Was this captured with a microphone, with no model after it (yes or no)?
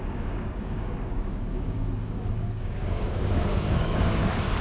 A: no